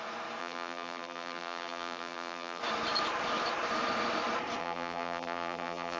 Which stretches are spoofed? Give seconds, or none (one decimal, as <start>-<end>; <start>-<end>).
0.4-2.6; 4.6-6.0